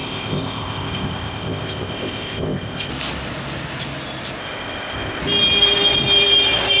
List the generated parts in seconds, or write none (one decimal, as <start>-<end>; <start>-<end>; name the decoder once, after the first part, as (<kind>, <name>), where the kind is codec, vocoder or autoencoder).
0.0-2.9 (codec, ZipCodec); 4.4-5.2